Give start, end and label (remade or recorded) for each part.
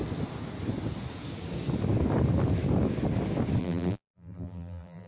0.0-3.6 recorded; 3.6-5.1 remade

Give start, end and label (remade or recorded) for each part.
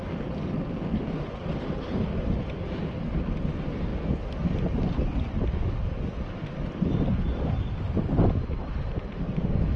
0.0-9.8 recorded